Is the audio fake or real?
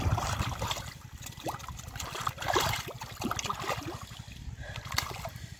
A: real